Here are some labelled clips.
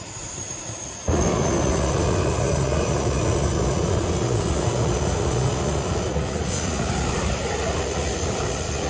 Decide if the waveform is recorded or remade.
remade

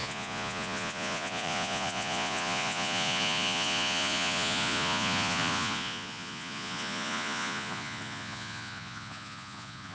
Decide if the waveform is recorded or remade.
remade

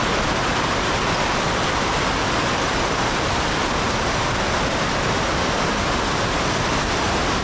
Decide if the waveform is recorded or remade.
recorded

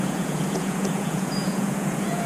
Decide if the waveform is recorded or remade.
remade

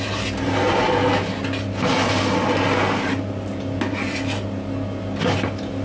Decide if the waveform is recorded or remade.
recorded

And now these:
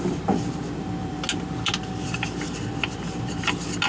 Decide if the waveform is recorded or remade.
recorded